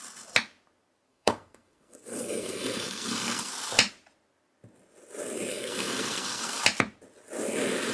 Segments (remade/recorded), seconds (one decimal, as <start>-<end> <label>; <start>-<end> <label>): 0.0-1.1 recorded; 1.1-3.5 remade; 3.5-5.5 recorded; 5.5-6.6 remade; 6.6-7.9 recorded